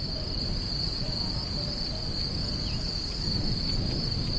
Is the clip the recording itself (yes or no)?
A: yes